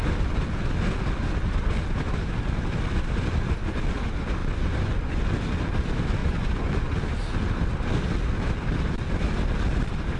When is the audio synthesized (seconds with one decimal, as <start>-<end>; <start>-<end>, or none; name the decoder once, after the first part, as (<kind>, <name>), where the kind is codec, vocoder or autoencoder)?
4.4-5.2 (vocoder, Vocos); 6.2-6.9